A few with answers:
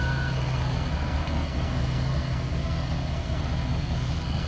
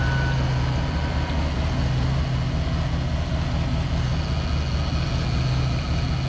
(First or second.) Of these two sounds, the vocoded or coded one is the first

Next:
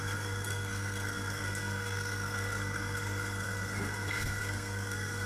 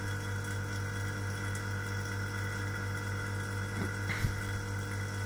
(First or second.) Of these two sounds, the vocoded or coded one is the first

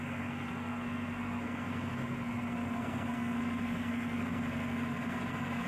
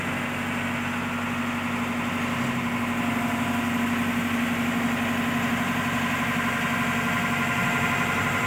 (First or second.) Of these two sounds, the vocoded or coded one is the first